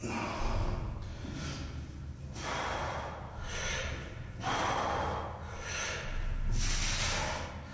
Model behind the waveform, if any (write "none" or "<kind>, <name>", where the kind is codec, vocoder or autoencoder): none